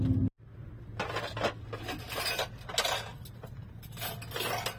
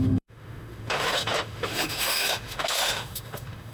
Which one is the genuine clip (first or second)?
first